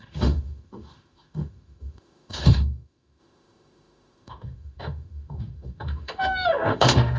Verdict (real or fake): fake